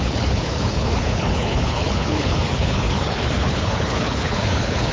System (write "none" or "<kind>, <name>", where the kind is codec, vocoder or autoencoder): codec, HILCodec